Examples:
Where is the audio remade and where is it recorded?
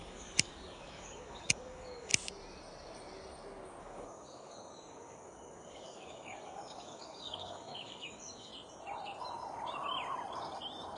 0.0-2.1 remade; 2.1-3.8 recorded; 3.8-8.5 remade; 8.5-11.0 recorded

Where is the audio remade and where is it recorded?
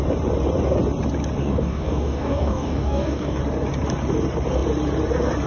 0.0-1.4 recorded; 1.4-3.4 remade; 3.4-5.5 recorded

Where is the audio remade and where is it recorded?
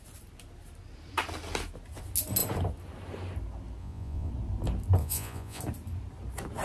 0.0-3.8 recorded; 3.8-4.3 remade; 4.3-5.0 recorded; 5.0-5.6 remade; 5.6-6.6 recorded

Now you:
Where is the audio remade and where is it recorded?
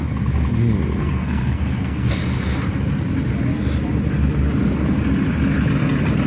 0.0-1.0 recorded; 1.0-2.2 remade; 2.2-6.3 recorded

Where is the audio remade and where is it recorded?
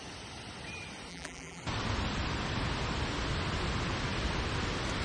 0.0-1.1 recorded; 1.1-1.6 remade; 1.6-5.0 recorded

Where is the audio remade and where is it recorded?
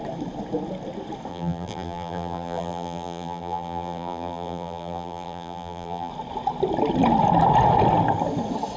0.0-1.3 recorded; 1.3-6.1 remade; 6.1-8.8 recorded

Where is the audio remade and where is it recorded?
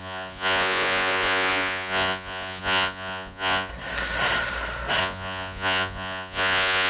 0.0-3.7 remade; 3.7-5.0 recorded; 5.0-6.9 remade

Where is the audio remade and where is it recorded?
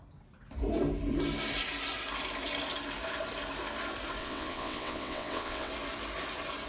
0.0-4.2 recorded; 4.2-5.7 remade; 5.7-6.7 recorded